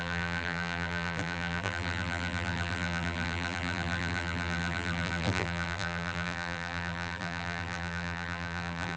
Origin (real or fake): fake